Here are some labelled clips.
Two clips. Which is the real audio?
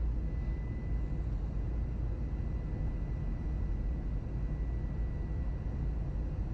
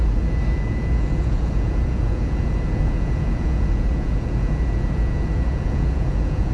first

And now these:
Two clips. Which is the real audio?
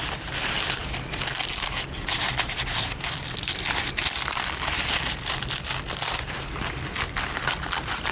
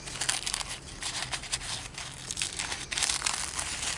second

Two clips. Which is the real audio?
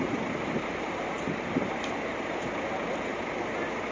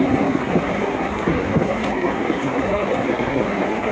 first